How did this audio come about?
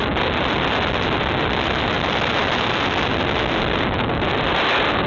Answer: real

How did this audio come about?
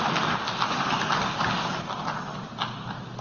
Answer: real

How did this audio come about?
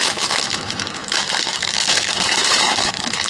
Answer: fake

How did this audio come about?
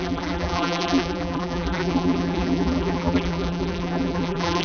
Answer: fake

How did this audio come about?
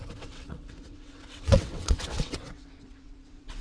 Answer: fake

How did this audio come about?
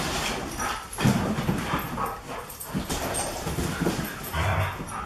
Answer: real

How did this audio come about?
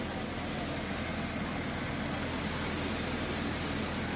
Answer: real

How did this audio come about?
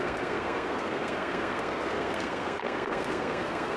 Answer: fake